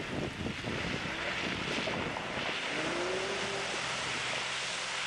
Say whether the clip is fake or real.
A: real